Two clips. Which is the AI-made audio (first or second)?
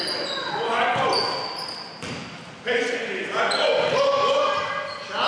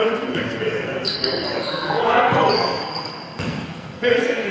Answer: second